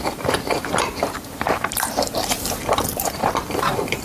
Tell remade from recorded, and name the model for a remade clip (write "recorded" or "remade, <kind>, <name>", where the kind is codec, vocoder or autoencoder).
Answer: remade, vocoder, BigVGAN v2